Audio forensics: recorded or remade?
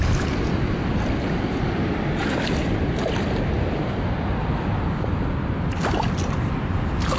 recorded